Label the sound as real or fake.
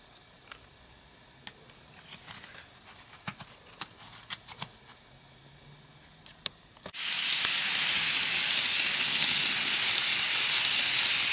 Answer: real